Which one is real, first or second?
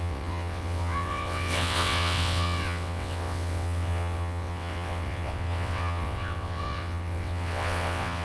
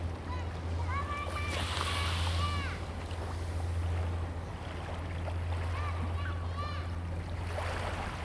second